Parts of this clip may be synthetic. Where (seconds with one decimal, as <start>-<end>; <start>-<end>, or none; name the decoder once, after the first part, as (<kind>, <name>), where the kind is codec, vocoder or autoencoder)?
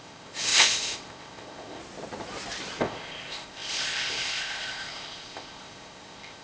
0.0-1.8 (codec, ZipCodec); 2.8-6.4